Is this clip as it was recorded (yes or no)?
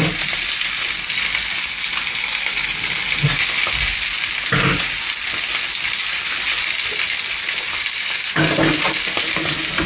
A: yes